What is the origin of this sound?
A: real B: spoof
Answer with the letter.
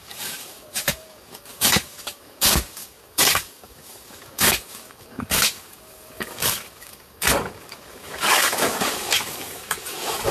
B